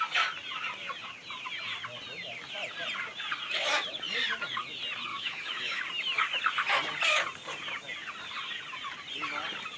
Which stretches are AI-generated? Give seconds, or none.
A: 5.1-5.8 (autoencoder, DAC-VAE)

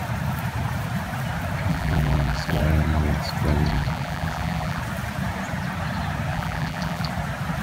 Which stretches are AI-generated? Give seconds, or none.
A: 1.7-2.6 (vocoder, BigVGAN v2); 3.7-4.8; 6.3-7.1

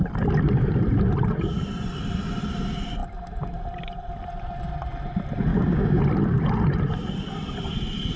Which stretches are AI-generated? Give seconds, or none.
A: 5.5-6.0 (codec, DAC)

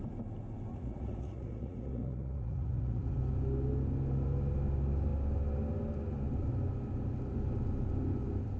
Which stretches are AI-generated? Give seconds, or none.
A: 0.7-3.2 (vocoder, Vocos)

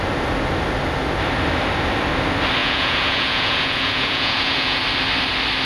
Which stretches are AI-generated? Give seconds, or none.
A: 2.6-4.8 (vocoder, Vocos)